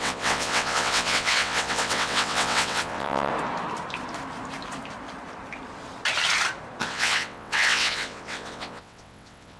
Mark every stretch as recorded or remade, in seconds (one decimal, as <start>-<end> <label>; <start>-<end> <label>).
0.0-3.3 remade; 3.3-6.8 recorded; 6.8-9.6 remade